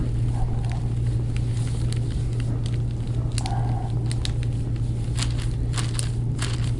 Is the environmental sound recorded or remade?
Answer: recorded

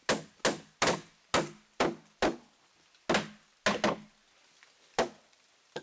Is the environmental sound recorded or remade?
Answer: recorded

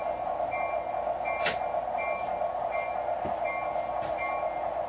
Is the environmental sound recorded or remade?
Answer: recorded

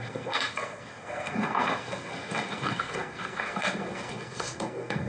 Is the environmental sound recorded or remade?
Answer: remade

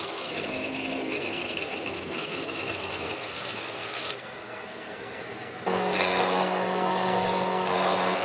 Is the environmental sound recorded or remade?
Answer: remade